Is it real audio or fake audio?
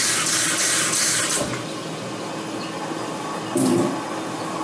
real